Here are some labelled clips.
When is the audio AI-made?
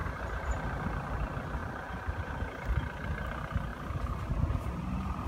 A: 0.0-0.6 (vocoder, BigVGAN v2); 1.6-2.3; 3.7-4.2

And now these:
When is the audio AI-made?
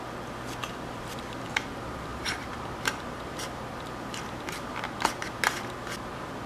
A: 0.6-1.7 (vocoder, BigVGAN v2); 2.1-4.0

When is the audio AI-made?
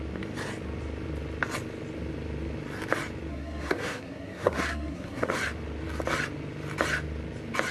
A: 3.3-5.3 (codec, SNAC)